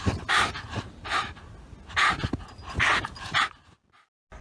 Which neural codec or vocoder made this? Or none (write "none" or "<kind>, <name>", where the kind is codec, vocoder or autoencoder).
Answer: none